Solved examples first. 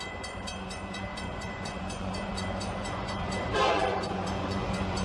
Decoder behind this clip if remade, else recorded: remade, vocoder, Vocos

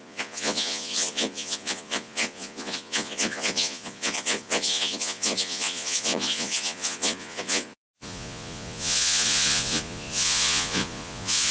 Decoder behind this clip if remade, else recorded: remade, vocoder, Vocos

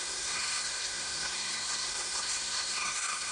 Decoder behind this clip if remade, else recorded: remade, codec, SNAC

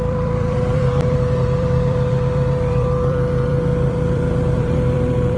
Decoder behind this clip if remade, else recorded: remade, vocoder, BigVGAN v2